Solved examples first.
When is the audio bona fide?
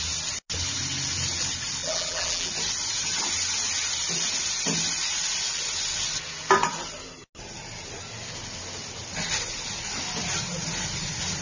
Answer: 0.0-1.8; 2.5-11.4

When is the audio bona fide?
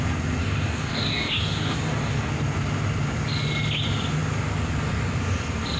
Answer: 0.0-0.4; 2.3-5.8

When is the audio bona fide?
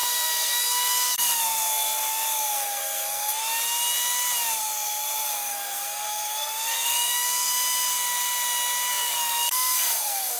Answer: 3.4-4.6; 7.5-8.9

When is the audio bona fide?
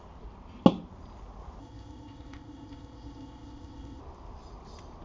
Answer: 0.0-1.6; 4.0-5.0